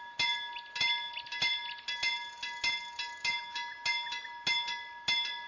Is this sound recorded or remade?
recorded